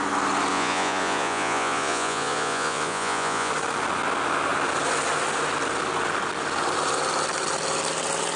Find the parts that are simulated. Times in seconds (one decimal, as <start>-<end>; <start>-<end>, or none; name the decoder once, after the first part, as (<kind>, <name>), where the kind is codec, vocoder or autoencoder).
0.5-3.5 (vocoder, Vocos)

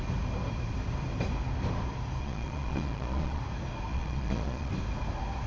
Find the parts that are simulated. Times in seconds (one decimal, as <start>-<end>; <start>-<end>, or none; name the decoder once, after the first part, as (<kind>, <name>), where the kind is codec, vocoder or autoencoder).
2.2-3.4 (vocoder, Vocos); 3.9-4.7

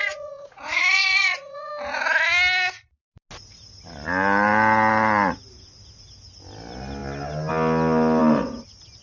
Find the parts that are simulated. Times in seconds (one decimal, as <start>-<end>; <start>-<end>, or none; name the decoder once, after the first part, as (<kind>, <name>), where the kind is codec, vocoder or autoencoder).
0.0-1.7 (vocoder, Vocos)